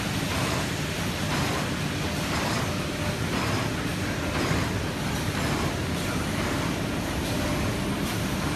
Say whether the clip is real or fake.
real